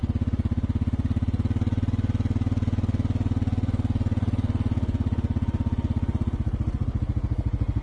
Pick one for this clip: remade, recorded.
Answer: recorded